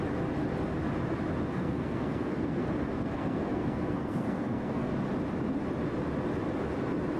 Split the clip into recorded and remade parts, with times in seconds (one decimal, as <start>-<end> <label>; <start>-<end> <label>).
0.0-1.5 recorded; 1.5-4.9 remade; 4.9-7.2 recorded